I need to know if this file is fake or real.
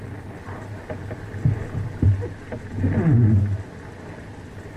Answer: real